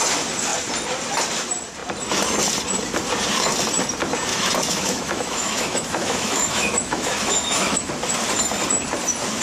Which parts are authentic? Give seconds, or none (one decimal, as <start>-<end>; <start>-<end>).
0.0-4.3; 7.9-9.4